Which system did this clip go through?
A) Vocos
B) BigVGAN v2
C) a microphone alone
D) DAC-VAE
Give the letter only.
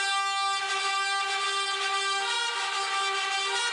C